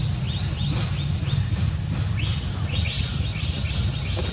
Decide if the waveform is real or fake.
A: real